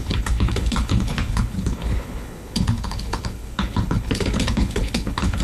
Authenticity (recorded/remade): remade